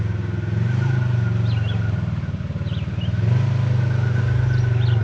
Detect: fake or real real